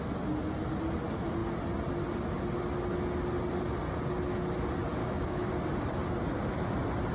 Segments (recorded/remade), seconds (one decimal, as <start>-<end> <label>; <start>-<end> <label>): 0.0-5.0 recorded; 5.0-5.5 remade; 5.5-7.1 recorded